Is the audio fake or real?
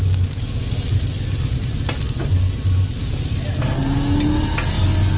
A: real